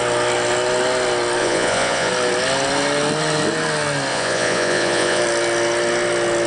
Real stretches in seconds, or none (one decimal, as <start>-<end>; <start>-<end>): 0.0-1.4; 2.1-4.1; 5.2-6.5